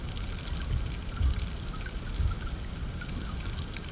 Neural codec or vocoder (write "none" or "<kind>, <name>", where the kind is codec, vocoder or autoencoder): none